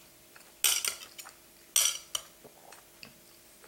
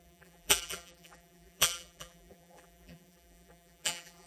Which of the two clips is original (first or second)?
first